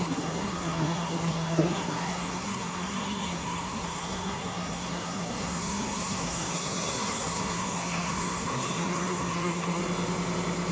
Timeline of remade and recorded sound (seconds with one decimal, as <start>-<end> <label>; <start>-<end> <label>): 0.0-9.8 remade; 9.8-10.7 recorded